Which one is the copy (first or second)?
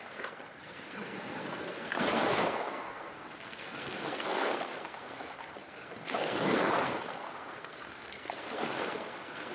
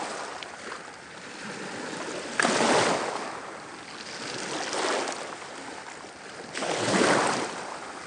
first